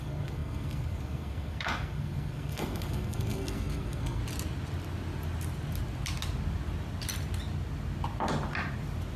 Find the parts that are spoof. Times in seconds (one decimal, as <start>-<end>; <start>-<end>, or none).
0.0-4.2